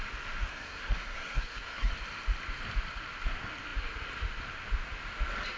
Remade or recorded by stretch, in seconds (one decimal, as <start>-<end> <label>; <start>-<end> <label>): 0.0-0.5 recorded; 0.5-1.9 remade; 1.9-5.6 recorded